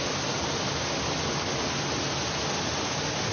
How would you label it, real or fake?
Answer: real